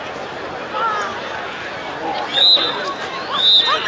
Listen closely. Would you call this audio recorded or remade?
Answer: recorded